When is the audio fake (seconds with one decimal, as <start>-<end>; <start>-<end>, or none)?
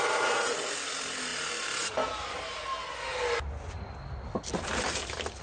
none